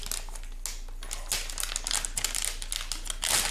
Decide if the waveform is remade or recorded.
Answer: recorded